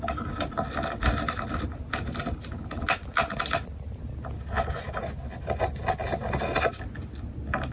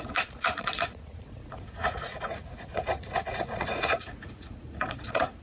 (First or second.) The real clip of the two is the first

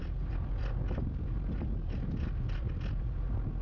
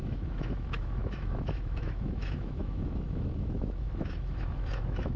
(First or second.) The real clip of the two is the first